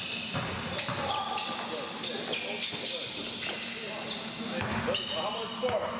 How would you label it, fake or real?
real